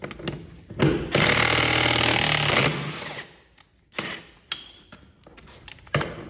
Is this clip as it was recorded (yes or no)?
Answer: yes